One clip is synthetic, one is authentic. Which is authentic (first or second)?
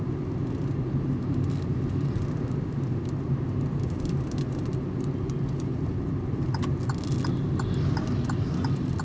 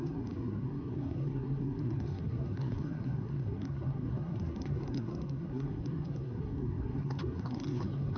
first